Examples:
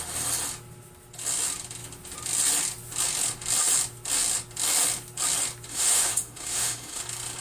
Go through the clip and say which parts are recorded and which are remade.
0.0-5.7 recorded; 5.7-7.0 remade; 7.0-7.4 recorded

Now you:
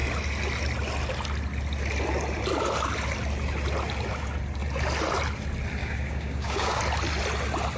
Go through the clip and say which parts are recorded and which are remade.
0.0-5.8 recorded; 5.8-6.8 remade; 6.8-7.8 recorded

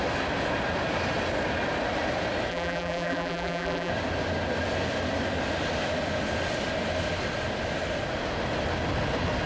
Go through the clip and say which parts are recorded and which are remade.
0.0-2.5 recorded; 2.5-3.9 remade; 3.9-9.5 recorded

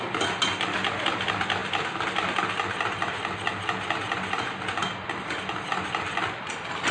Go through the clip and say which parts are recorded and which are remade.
0.0-6.9 recorded

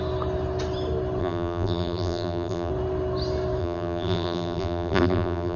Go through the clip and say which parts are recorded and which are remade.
0.0-1.2 recorded; 1.2-2.7 remade; 2.7-3.6 recorded; 3.6-5.6 remade

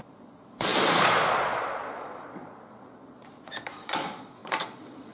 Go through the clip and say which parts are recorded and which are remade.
0.0-5.1 remade